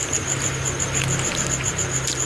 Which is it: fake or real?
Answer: real